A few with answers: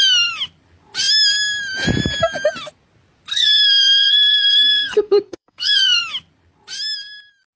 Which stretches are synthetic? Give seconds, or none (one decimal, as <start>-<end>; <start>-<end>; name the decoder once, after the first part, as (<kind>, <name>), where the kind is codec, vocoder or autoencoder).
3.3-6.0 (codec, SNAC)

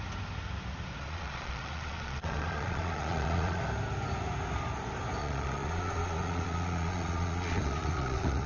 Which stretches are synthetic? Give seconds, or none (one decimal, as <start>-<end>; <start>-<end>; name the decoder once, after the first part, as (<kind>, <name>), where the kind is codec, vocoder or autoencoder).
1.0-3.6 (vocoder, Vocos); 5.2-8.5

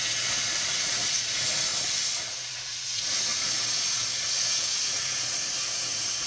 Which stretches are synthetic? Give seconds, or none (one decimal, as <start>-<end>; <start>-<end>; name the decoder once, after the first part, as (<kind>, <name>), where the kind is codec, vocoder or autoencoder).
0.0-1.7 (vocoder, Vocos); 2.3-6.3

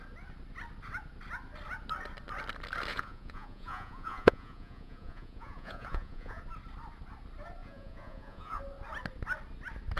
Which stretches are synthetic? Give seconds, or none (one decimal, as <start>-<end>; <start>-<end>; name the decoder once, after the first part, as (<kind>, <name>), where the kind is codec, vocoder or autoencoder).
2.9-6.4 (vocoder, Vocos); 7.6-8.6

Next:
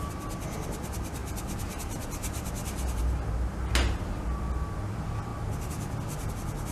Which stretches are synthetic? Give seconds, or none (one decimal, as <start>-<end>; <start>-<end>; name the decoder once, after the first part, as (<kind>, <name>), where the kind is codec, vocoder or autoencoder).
none